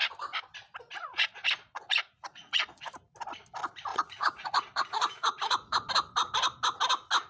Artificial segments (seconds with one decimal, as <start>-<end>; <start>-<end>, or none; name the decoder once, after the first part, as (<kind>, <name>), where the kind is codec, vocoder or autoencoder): 1.0-2.9 (vocoder, Vocos); 3.9-5.9